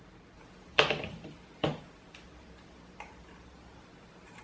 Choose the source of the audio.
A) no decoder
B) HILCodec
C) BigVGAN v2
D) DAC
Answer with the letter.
C